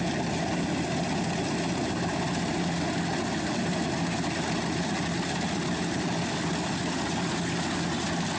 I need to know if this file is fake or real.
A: real